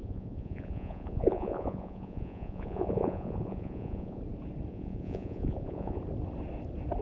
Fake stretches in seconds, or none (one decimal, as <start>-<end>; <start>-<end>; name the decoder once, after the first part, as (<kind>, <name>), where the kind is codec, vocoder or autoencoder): 0.0-4.2 (vocoder, Vocos); 4.7-6.0